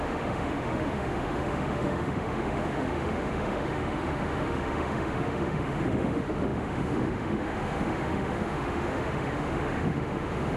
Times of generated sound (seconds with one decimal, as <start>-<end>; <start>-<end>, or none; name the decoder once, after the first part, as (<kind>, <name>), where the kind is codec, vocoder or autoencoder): 0.0-10.6 (autoencoder, DAC-VAE)